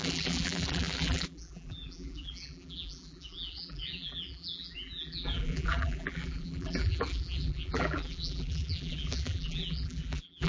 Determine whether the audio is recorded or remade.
remade